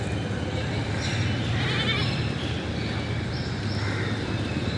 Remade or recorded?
recorded